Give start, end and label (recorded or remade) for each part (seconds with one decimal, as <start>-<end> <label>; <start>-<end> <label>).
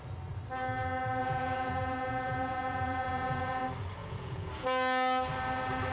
0.0-1.2 recorded; 1.2-3.6 remade; 3.6-4.0 recorded; 4.0-4.5 remade; 4.5-5.9 recorded